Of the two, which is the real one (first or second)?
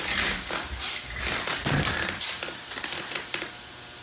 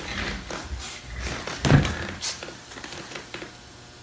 second